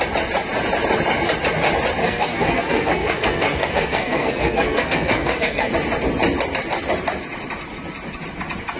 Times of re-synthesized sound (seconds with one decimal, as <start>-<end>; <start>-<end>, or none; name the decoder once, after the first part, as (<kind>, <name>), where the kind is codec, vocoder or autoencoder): 2.0-5.7 (codec, SNAC)

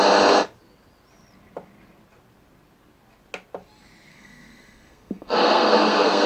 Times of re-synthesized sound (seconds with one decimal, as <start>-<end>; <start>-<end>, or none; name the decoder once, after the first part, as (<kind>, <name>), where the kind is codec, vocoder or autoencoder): 4.1-6.3 (codec, SNAC)